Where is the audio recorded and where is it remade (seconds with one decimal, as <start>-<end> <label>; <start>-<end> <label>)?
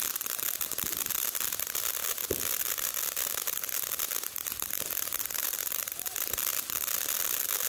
0.0-7.7 recorded